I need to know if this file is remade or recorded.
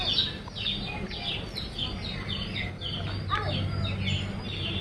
recorded